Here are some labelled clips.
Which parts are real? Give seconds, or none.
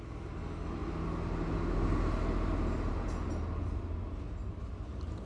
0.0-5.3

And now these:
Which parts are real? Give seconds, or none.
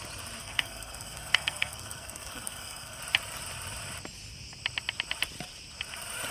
0.0-0.4; 3.0-6.3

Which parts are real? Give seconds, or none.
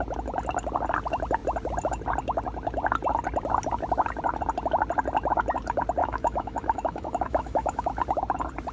0.0-6.0; 7.9-8.7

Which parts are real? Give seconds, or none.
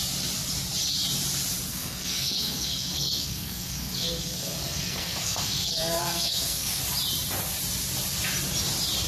0.0-1.7; 6.8-9.1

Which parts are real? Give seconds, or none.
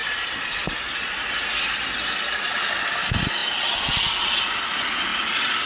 0.0-5.7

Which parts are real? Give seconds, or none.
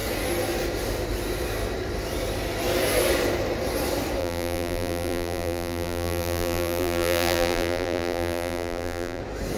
0.0-4.2; 9.2-9.6